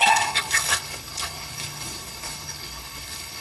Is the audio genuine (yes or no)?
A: no